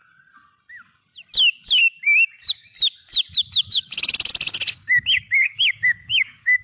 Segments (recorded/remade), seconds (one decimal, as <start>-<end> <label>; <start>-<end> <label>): 0.0-3.7 recorded; 3.7-4.3 remade; 4.3-5.0 recorded; 5.0-6.6 remade